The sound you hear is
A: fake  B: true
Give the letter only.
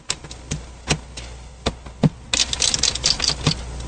B